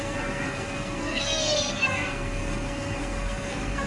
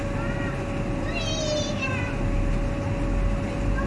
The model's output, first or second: first